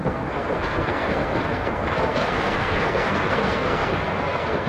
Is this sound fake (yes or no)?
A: yes